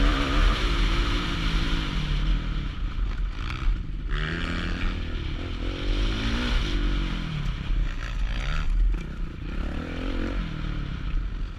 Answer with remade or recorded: recorded